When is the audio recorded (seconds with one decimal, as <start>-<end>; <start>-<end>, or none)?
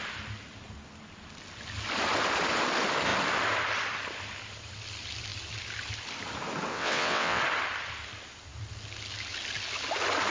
0.0-6.7; 7.4-10.3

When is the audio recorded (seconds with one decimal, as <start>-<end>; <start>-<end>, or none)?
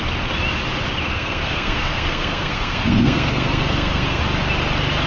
0.0-1.1; 4.2-5.1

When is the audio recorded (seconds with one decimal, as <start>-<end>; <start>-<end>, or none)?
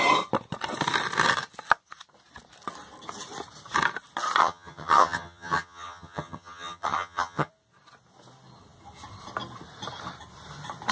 0.0-4.4; 7.5-10.9